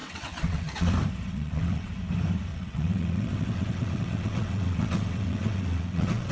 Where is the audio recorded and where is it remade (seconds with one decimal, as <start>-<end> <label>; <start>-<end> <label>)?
0.0-0.9 remade; 0.9-1.3 recorded; 1.3-1.9 remade; 1.9-2.5 recorded; 2.5-6.3 remade